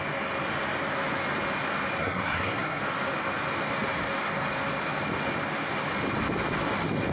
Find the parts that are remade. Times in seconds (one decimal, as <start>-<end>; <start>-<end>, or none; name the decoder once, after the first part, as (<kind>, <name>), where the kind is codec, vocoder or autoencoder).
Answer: 2.0-2.8 (codec, SNAC)

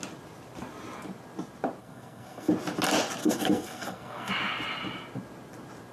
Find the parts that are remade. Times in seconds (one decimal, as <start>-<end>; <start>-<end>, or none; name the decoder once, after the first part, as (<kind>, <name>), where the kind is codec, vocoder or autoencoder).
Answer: 1.8-2.5 (codec, SNAC); 3.2-4.3